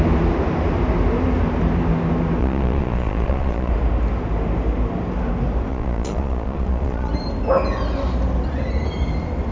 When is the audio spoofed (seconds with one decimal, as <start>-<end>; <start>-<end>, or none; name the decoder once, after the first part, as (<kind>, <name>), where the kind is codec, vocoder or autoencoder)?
2.4-3.7 (vocoder, Vocos); 5.7-7.1